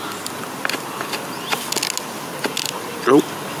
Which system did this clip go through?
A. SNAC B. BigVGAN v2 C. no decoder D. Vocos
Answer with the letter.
C